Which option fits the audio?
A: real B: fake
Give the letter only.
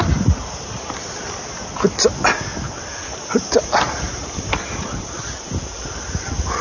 A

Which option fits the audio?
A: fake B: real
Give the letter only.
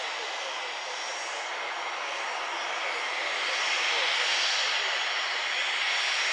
B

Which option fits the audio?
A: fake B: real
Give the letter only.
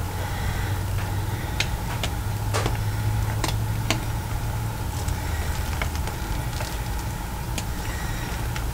B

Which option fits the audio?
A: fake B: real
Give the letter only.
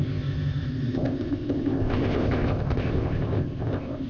A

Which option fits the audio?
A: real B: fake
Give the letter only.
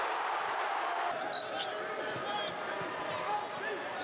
A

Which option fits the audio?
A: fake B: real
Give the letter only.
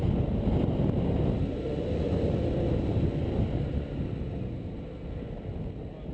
B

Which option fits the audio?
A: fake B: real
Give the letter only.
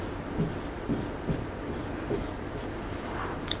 A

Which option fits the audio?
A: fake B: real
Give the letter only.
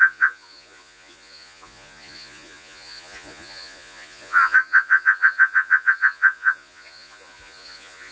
A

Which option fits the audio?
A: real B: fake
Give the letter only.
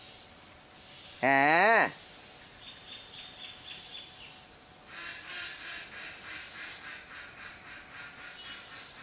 A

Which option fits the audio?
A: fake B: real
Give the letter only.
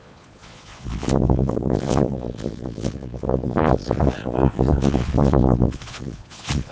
A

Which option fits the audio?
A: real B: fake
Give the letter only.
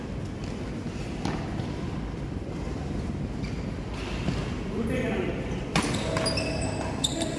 A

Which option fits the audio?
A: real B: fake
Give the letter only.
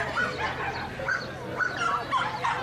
A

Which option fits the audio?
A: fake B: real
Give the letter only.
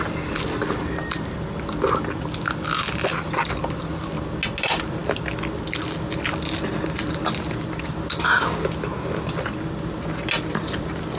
B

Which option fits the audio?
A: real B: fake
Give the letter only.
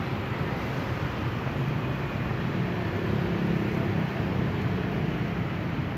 A